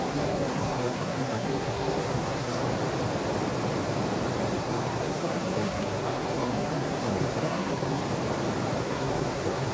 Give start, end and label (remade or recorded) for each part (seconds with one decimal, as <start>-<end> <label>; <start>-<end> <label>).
0.0-2.6 remade; 2.6-4.6 recorded; 4.6-8.0 remade; 8.0-8.8 recorded; 8.8-9.7 remade